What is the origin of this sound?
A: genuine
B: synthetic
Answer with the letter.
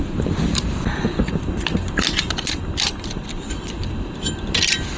A